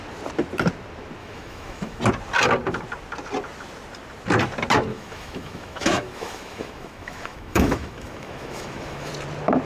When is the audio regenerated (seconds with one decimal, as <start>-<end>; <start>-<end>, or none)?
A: 1.2-2.0; 4.9-9.1